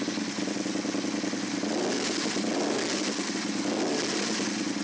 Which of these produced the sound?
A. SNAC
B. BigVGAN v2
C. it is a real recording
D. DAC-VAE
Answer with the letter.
C